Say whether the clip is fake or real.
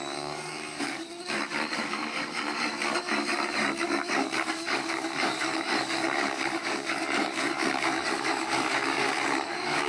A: fake